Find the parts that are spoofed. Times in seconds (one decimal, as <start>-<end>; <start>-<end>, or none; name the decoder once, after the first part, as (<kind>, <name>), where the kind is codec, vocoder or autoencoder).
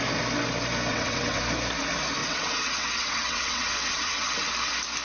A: 0.9-1.4 (vocoder, WaveNeXt); 2.2-4.5